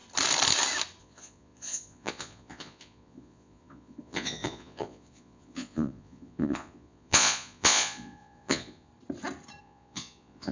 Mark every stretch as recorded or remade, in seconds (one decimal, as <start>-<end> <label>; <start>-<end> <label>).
0.0-1.0 recorded; 1.0-8.9 remade; 8.9-9.6 recorded; 9.6-10.5 remade